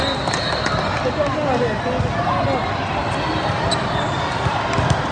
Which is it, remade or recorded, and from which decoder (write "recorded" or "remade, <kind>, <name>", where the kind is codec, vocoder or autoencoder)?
recorded